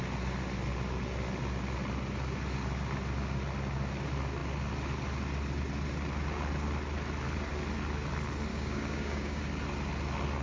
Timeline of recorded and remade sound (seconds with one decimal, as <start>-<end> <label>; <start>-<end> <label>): 0.0-8.5 recorded; 8.5-9.4 remade; 9.4-10.4 recorded